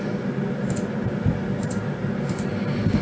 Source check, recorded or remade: recorded